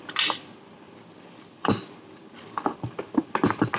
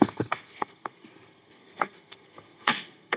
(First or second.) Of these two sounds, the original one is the first